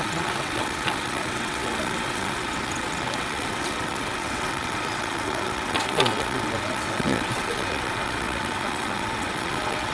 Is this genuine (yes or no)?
no